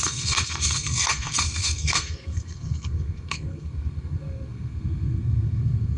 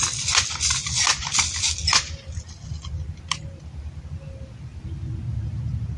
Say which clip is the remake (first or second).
first